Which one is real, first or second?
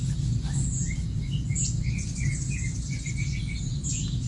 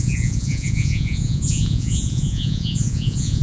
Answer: first